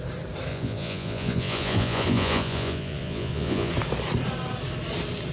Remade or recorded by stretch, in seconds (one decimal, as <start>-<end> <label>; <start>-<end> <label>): 0.0-0.5 recorded; 0.5-3.7 remade; 3.7-5.3 recorded